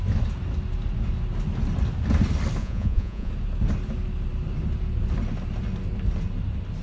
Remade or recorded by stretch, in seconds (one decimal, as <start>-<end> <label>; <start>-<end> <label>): 0.0-2.6 recorded; 2.6-3.3 remade; 3.3-6.8 recorded